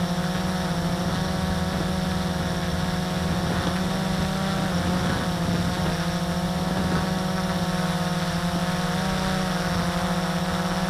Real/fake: real